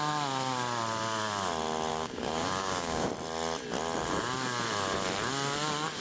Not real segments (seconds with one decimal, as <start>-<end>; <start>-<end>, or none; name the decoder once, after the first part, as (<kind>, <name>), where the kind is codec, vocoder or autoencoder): 1.9-3.1 (codec, DAC)